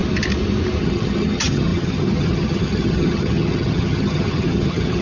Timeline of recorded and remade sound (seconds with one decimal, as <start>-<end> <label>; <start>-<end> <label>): 0.0-0.8 recorded; 0.8-5.0 remade

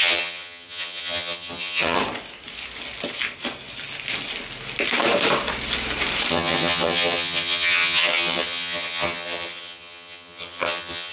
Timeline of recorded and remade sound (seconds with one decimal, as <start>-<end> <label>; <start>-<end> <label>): 0.0-2.0 remade; 2.0-6.3 recorded; 6.3-11.1 remade

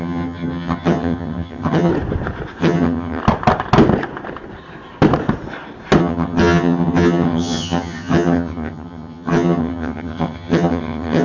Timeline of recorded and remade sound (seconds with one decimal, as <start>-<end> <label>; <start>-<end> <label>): 0.0-1.9 remade; 1.9-2.6 recorded; 2.6-3.2 remade; 3.2-6.0 recorded; 6.0-11.2 remade

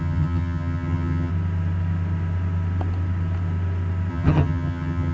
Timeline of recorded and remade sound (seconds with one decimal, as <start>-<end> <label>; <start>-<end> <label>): 0.0-1.3 remade; 1.3-4.1 recorded; 4.1-5.1 remade

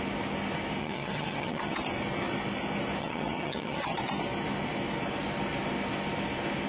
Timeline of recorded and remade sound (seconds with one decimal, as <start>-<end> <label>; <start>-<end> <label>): 0.0-0.8 recorded; 0.8-1.8 remade; 1.8-3.0 recorded; 3.0-4.0 remade; 4.0-6.7 recorded

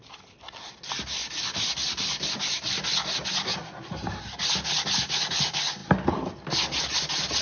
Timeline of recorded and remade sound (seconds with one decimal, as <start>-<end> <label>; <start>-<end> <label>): 0.0-7.4 recorded

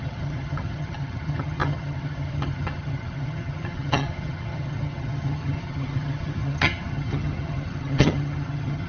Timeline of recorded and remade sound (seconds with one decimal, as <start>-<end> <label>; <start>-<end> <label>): 0.0-8.9 remade

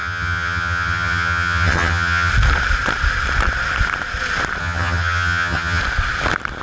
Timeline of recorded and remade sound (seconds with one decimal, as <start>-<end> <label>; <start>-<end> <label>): 0.0-2.3 remade; 2.3-4.6 recorded; 4.6-5.8 remade; 5.8-6.6 recorded